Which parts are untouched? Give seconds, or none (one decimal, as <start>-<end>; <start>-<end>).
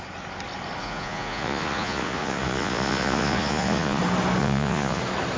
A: 0.0-0.8; 4.0-4.4; 5.0-5.4